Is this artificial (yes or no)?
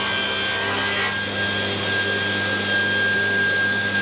no